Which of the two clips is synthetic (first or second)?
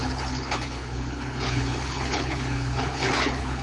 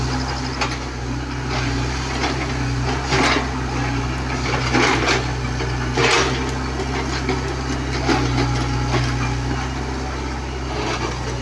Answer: first